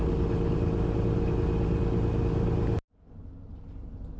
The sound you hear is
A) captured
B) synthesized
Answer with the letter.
A